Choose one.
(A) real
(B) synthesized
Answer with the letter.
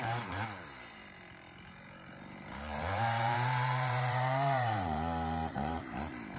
B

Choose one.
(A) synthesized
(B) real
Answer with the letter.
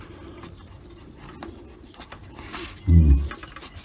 B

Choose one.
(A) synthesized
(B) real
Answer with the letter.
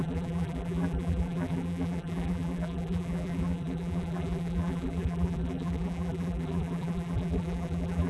A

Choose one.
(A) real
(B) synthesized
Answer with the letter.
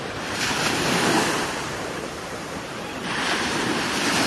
B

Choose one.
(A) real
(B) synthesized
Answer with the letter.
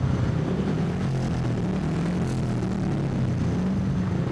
A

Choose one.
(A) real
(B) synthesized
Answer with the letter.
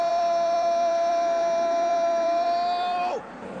B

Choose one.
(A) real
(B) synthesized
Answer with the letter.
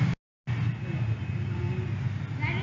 A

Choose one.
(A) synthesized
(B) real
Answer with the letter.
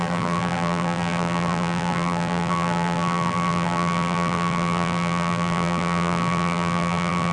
A